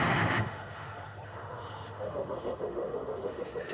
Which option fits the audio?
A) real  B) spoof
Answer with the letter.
B